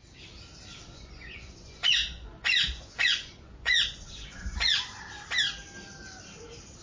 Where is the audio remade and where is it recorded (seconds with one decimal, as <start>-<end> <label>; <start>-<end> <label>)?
0.0-0.9 recorded; 0.9-5.0 remade; 5.0-6.8 recorded